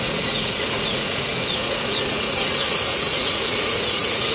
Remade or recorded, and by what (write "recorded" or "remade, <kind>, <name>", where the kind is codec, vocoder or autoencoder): remade, vocoder, Vocos